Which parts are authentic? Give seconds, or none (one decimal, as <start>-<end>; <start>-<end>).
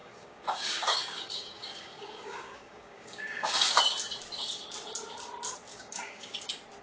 3.8-5.7; 6.3-6.8